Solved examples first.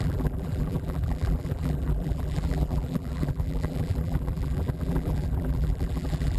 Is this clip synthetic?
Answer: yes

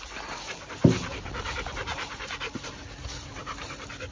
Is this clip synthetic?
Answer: yes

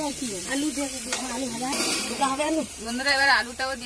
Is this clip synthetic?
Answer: yes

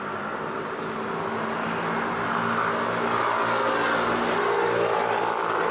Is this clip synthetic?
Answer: no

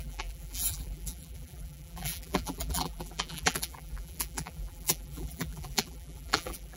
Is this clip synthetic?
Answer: yes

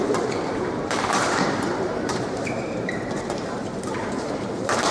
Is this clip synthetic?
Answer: yes